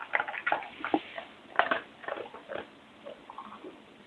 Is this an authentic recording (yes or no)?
yes